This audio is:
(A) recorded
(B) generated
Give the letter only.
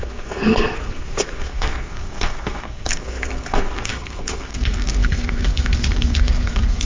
B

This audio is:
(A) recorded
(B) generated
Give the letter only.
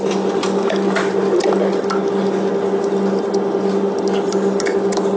A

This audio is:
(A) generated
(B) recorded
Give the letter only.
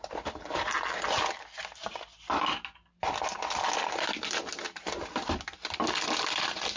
B